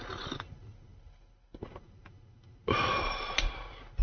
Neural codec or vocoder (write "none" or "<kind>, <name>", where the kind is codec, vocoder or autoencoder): none